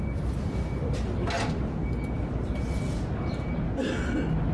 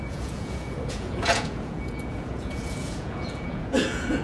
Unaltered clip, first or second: first